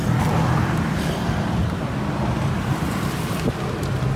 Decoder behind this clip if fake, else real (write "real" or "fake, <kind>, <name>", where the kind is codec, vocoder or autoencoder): fake, vocoder, BigVGAN v2